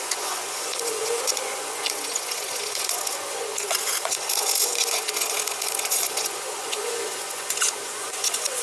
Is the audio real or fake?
fake